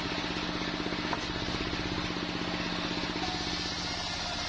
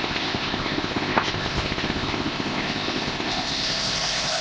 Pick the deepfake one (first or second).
second